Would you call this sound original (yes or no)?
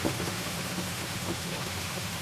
no